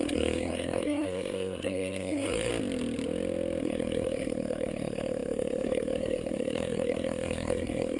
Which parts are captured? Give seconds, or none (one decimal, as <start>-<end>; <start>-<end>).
2.5-3.6